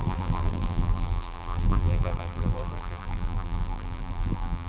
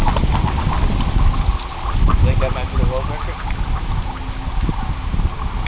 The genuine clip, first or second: second